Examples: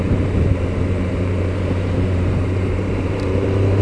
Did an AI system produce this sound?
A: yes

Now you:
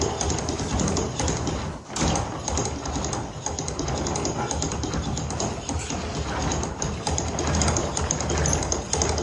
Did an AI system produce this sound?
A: no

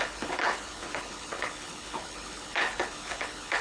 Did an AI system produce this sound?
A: yes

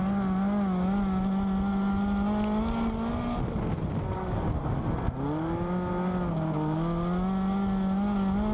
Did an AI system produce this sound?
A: no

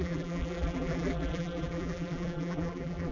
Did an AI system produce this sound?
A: yes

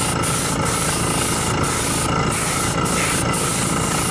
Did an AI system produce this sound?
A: no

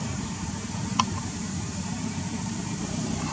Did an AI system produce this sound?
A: yes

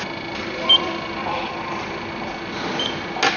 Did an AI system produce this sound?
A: no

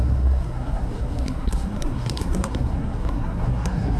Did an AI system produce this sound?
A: yes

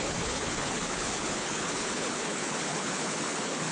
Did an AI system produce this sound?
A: yes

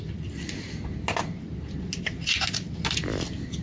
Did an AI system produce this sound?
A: no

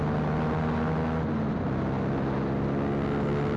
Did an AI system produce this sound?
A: no